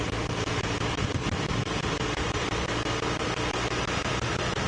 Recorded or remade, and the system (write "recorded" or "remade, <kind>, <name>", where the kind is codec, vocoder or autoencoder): remade, vocoder, BigVGAN v2